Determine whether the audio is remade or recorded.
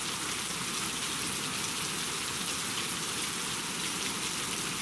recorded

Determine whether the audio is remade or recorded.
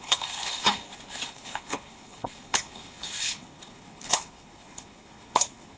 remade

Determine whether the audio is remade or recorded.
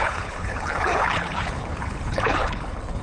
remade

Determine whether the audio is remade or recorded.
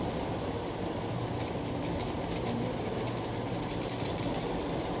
recorded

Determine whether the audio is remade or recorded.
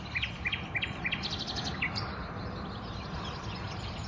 recorded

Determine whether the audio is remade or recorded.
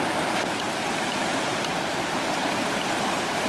recorded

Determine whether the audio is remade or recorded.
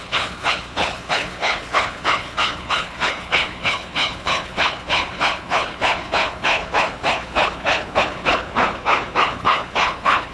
remade